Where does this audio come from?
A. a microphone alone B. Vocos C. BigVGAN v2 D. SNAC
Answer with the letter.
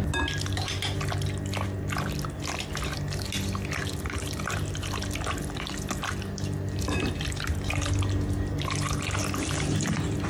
A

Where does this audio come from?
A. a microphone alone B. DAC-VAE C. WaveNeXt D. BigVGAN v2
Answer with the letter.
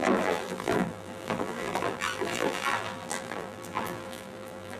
D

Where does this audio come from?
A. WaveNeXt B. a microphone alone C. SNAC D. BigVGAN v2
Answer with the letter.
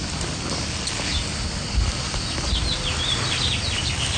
B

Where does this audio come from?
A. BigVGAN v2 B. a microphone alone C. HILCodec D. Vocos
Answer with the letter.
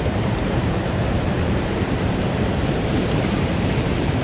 A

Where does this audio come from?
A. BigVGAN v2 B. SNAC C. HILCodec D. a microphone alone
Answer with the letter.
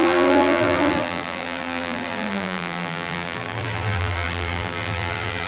A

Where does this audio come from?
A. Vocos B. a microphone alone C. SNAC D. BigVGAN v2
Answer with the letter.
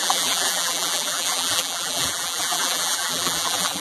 D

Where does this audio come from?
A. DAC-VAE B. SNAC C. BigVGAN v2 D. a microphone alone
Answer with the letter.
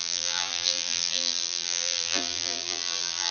C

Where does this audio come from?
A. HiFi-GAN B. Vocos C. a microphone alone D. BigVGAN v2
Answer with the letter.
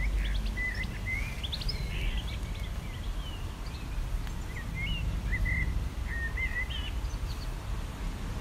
C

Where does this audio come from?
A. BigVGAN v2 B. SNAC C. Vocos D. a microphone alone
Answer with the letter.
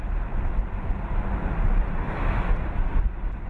D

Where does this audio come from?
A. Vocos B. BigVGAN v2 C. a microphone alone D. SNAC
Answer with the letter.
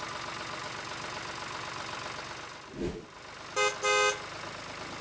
C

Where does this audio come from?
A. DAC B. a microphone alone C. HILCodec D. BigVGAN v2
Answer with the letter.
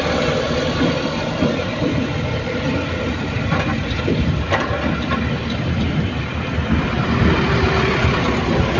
D